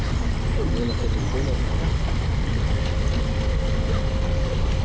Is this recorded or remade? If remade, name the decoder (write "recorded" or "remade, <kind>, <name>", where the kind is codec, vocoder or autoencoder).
recorded